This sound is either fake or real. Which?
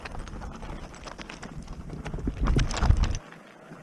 real